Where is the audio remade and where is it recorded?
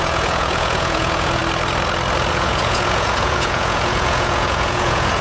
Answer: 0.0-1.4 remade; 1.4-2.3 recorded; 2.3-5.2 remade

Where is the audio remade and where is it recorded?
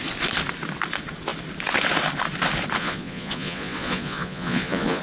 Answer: 0.0-2.8 recorded; 2.8-5.0 remade